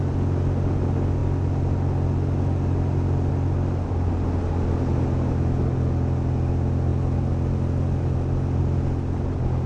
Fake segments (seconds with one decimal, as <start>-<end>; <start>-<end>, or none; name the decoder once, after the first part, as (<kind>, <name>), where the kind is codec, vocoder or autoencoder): none